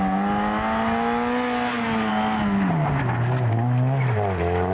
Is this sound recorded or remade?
recorded